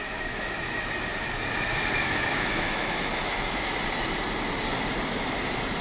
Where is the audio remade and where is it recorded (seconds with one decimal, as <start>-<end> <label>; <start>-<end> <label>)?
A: 0.0-0.8 remade; 0.8-2.0 recorded; 2.0-3.8 remade; 3.8-5.8 recorded